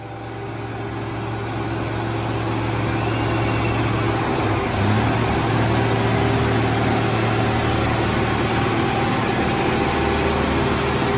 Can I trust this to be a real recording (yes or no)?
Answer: yes